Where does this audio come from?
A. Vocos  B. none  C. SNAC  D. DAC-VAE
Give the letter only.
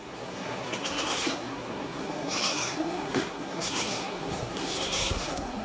C